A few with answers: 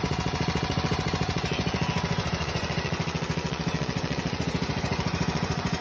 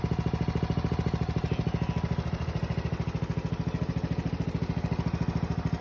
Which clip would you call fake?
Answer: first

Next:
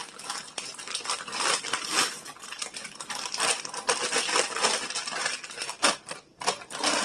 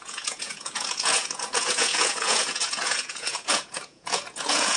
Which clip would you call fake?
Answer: second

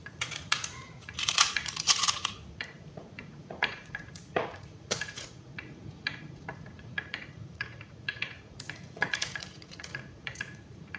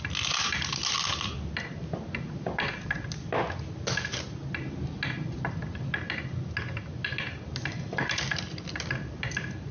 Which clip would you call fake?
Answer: first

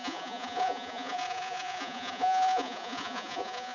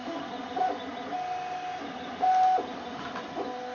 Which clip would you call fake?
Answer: first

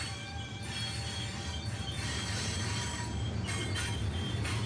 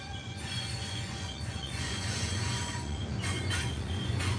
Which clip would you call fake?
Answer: second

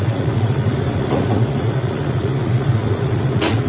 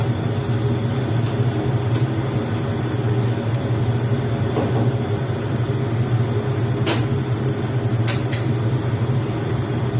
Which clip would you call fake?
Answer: first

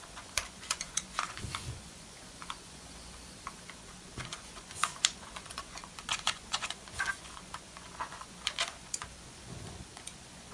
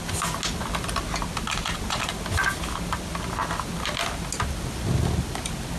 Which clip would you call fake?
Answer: first